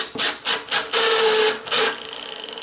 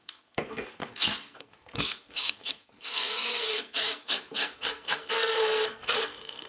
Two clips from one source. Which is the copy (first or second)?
second